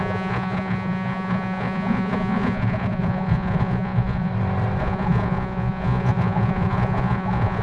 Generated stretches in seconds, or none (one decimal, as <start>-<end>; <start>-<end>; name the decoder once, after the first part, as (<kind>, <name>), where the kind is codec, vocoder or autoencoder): 0.0-4.3 (vocoder, Vocos); 4.8-7.6